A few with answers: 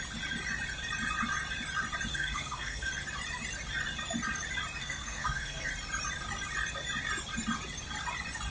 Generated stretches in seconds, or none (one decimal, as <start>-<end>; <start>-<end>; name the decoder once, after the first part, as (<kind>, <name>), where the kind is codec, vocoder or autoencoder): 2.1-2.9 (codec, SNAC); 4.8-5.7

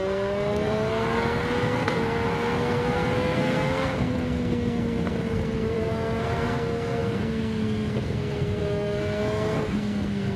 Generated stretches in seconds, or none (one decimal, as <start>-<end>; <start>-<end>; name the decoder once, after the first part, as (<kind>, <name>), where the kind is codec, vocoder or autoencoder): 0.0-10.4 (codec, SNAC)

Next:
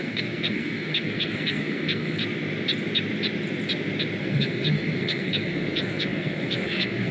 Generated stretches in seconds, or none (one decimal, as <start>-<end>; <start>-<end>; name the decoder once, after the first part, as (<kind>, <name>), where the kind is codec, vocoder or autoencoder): 0.0-2.2 (codec, SNAC); 4.2-7.1

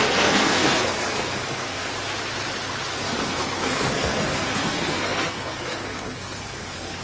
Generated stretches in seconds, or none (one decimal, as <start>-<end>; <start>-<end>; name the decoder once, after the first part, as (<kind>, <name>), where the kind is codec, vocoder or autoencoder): 0.0-1.9 (codec, SNAC); 3.0-7.0

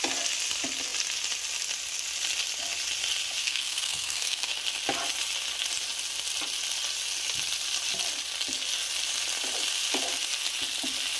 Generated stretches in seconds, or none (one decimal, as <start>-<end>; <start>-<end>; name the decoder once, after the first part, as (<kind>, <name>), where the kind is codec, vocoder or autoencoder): 3.4-4.5 (codec, SNAC)